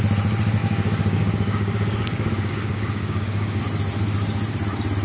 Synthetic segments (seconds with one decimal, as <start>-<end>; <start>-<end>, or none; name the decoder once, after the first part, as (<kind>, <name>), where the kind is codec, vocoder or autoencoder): 0.6-3.6 (codec, DAC)